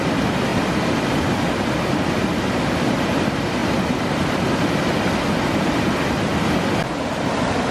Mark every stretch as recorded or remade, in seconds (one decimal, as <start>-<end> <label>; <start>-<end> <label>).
0.0-3.6 recorded; 3.6-5.5 remade; 5.5-7.7 recorded